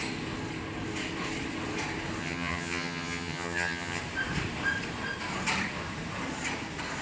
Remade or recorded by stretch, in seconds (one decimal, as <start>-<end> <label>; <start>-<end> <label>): 0.0-2.2 recorded; 2.2-4.0 remade; 4.0-7.0 recorded